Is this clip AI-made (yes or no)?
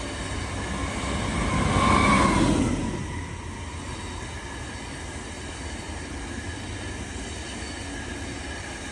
no